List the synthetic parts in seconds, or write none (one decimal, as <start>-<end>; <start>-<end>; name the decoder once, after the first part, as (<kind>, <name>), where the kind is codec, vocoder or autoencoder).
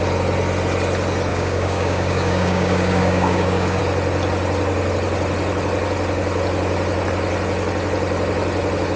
1.3-3.8 (codec, DAC)